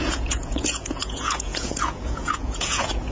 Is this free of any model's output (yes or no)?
no